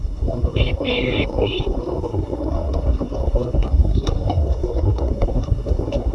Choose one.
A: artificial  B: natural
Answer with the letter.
A